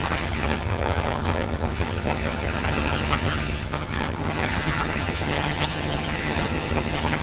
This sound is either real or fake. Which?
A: fake